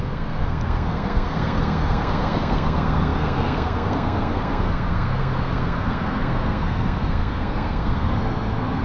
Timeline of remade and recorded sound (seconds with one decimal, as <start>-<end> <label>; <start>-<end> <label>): 0.0-8.8 remade